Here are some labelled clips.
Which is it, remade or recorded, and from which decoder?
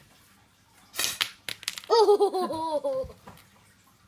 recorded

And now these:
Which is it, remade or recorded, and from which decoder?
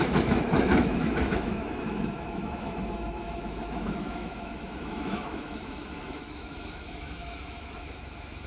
remade, autoencoder, DAC-VAE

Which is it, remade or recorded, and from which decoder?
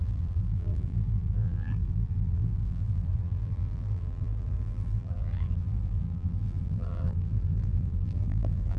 remade, vocoder, BigVGAN v2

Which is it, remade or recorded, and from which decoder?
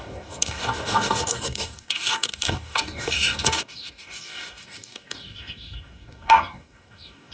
remade, codec, DAC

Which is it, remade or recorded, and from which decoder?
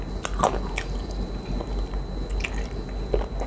recorded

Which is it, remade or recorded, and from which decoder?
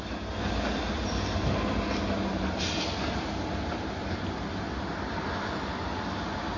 recorded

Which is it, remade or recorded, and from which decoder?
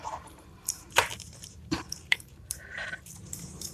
remade, vocoder, BigVGAN v2